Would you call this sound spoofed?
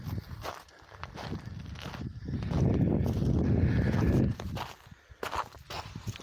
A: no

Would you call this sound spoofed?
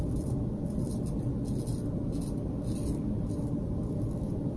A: no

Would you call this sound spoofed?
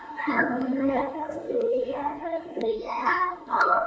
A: yes